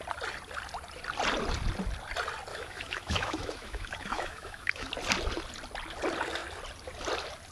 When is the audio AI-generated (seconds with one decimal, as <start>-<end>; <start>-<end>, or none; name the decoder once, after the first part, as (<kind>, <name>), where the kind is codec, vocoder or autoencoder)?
2.5-4.9 (autoencoder, DAC-VAE)